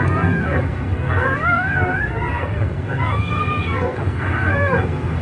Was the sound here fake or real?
fake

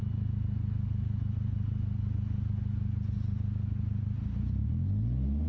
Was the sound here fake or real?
real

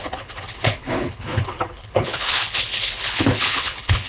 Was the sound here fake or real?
fake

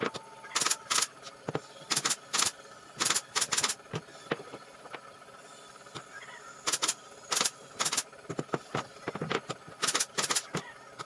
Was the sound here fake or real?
real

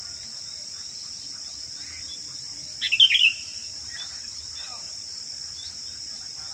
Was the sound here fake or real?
real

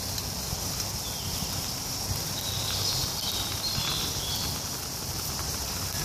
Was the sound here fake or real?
real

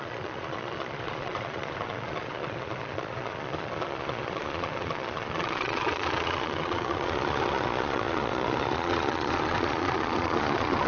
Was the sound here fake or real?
fake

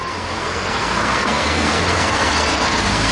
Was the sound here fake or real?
fake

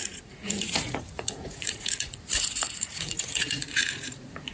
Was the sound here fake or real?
fake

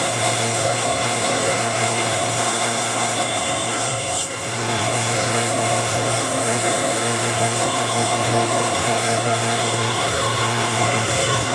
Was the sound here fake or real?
fake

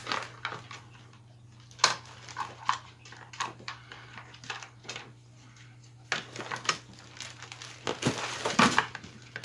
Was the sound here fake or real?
real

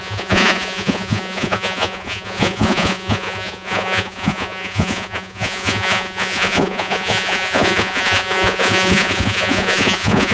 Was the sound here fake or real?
fake